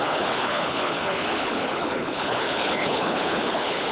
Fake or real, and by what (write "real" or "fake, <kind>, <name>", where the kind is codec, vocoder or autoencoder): fake, codec, HILCodec